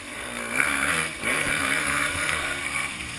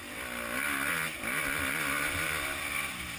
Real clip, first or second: second